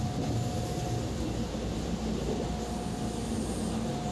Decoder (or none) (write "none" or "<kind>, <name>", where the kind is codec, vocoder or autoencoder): none